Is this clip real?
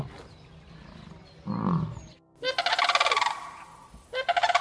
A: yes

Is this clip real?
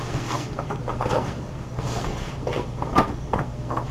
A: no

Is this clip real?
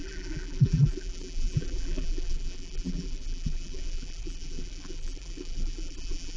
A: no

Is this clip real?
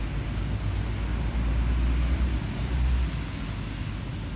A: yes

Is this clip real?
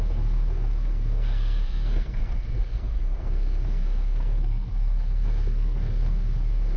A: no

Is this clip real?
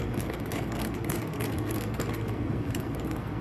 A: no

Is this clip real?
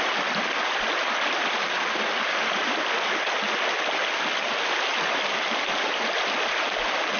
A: yes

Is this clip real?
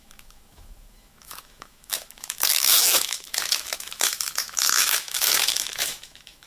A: no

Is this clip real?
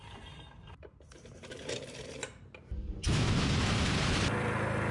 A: no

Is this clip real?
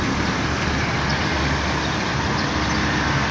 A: yes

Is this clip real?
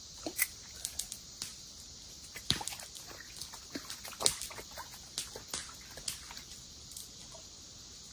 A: yes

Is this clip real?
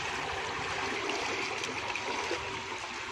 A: yes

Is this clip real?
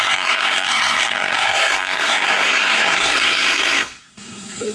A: no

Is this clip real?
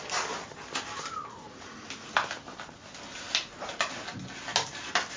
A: yes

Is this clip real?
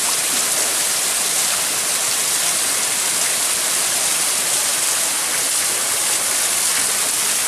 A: yes